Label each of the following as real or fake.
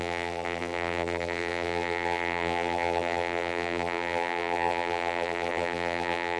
fake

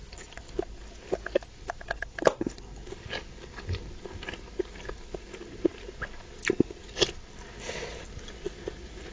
real